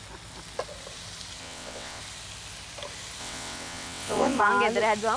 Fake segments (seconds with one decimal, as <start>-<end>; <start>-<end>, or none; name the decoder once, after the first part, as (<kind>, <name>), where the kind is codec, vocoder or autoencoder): 1.4-2.0 (vocoder, WaveNeXt); 3.2-4.4